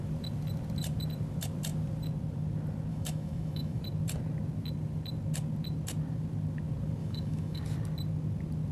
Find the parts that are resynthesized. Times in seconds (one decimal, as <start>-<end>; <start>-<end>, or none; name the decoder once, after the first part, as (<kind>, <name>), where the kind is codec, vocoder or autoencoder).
2.9-3.8 (autoencoder, DAC-VAE); 7.0-7.6